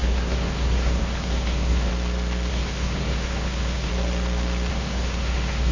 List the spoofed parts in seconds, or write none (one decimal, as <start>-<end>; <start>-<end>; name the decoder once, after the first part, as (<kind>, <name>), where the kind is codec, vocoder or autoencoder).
0.0-1.9 (codec, SNAC); 2.5-3.9; 4.7-5.7